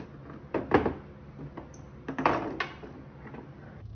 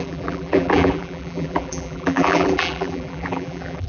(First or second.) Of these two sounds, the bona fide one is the first